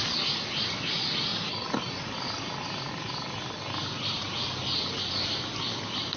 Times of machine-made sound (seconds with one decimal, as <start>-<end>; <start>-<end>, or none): none